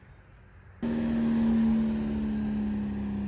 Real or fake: real